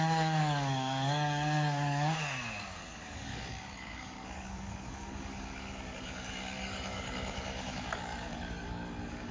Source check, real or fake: fake